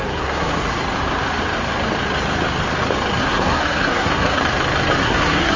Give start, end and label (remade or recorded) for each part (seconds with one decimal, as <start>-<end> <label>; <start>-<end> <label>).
0.0-0.5 remade; 0.5-3.2 recorded; 3.2-4.4 remade; 4.4-5.0 recorded; 5.0-5.6 remade